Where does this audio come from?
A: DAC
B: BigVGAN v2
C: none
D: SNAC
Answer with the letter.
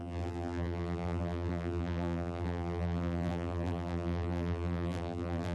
B